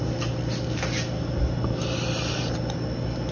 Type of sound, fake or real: real